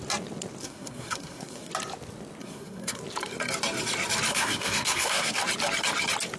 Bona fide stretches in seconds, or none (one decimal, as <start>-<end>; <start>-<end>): 0.0-0.6; 1.7-2.4; 3.0-4.3; 5.4-6.4